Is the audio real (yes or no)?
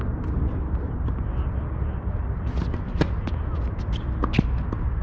yes